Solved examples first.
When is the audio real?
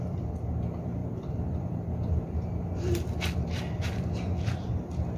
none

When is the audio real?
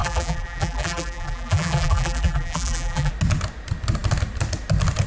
3.1-5.1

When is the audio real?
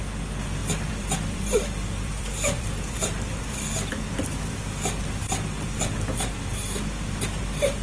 0.0-0.6; 3.9-4.3; 5.0-7.8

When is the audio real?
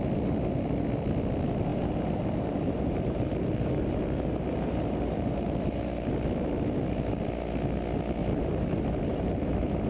0.0-1.7; 6.1-8.2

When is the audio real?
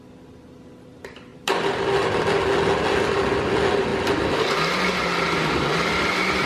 0.0-1.3; 2.4-6.5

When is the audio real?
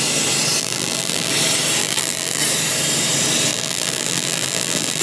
0.0-0.6; 1.3-1.8; 2.4-3.5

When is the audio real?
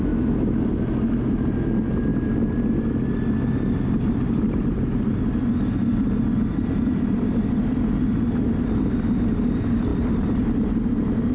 0.0-11.3